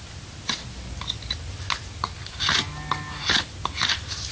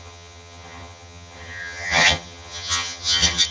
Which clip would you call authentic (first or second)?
first